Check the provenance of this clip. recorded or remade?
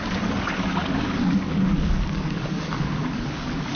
remade